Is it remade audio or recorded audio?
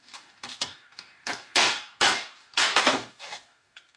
remade